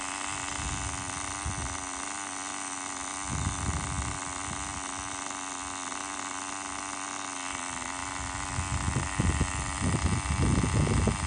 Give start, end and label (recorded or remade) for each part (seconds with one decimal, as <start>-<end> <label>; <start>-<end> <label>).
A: 0.0-11.3 recorded